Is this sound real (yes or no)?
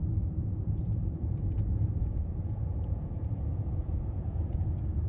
no